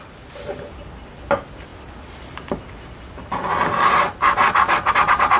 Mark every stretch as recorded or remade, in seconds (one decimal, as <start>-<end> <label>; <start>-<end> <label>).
0.0-5.4 recorded